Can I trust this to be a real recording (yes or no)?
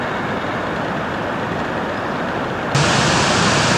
yes